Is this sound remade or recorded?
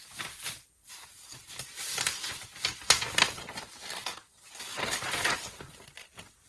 remade